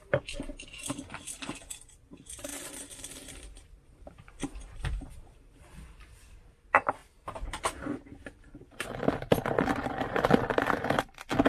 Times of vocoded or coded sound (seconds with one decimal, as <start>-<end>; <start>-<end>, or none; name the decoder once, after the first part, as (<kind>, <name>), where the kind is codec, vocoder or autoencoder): 2.5-5.7 (vocoder, BigVGAN v2); 7.0-7.6; 9.8-10.3